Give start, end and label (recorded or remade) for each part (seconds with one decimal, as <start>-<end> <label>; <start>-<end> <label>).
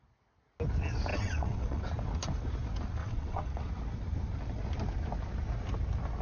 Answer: 0.0-1.1 recorded; 1.1-1.8 remade; 1.8-3.0 recorded; 3.0-3.7 remade; 3.7-6.2 recorded